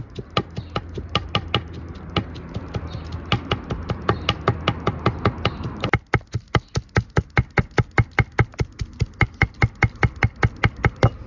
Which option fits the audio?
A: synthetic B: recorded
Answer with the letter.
B